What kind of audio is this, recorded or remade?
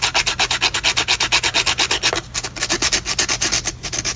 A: recorded